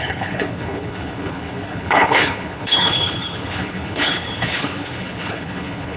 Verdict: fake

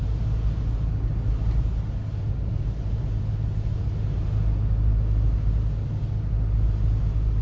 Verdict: real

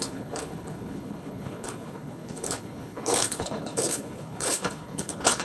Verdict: fake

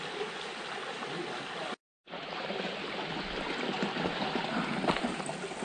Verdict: real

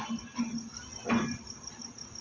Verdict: real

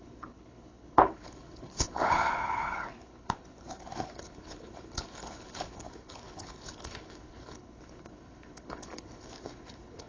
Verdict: fake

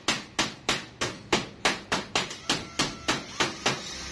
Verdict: real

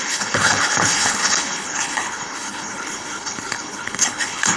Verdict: fake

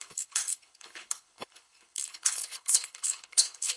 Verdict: fake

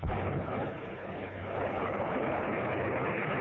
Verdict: fake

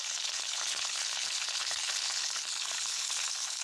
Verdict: fake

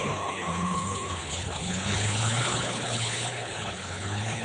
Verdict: fake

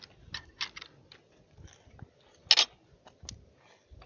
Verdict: real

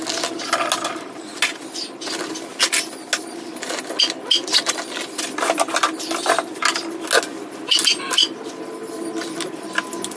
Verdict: real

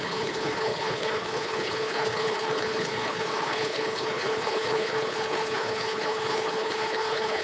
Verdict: fake